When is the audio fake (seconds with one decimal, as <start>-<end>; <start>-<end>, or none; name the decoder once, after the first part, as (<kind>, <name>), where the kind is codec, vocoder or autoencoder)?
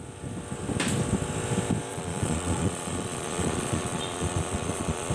1.9-5.1 (vocoder, Vocos)